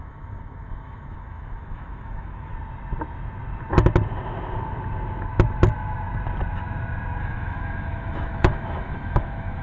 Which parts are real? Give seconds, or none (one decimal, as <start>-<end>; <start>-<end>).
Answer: 2.5-7.2